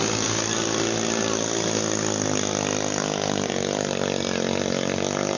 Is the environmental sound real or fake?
real